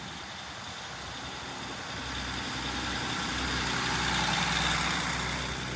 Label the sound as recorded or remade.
recorded